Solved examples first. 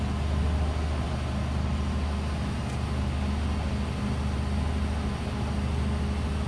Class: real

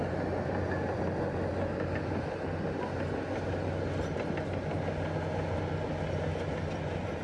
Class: real